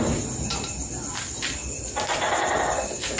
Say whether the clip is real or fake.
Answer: real